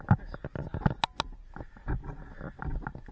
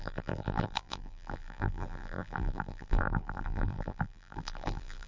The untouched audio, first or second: first